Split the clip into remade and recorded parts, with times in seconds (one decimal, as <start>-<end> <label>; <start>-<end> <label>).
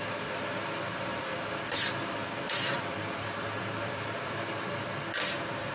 0.0-1.1 recorded; 1.1-4.5 remade; 4.5-5.7 recorded